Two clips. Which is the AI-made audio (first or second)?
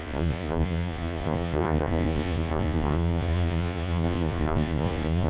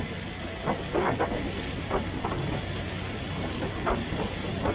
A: first